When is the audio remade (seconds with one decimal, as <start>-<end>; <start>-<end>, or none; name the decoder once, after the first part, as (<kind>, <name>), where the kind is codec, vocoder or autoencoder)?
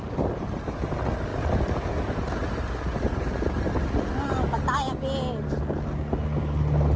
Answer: none